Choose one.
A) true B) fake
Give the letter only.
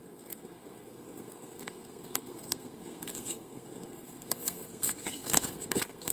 B